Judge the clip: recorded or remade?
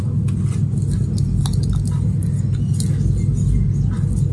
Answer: recorded